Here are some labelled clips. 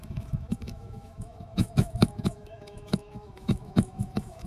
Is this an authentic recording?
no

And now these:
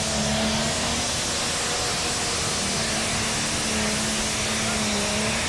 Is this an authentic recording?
yes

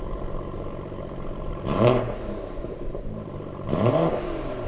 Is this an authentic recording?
no